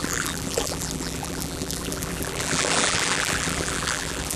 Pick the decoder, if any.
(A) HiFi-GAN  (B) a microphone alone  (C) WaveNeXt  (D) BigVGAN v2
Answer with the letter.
D